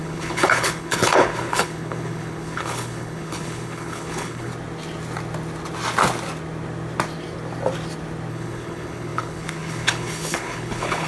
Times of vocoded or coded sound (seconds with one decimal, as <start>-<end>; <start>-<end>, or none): 0.0-4.5; 8.3-11.1